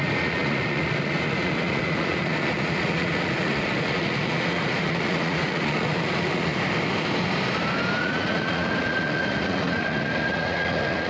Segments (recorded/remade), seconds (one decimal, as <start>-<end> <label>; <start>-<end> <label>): 0.0-6.5 remade; 6.5-8.0 recorded; 8.0-11.1 remade